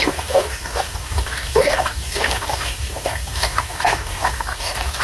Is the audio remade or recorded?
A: remade